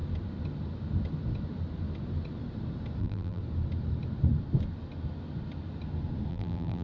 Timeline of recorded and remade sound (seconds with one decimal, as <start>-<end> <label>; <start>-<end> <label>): 0.0-3.0 recorded; 3.0-3.4 remade; 3.4-6.3 recorded; 6.3-6.8 remade